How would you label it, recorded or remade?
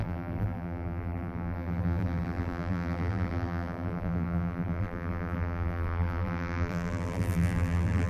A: remade